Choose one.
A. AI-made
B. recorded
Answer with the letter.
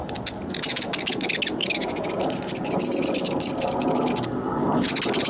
B